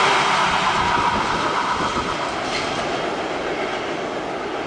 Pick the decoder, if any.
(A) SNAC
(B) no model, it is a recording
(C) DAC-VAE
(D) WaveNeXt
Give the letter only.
B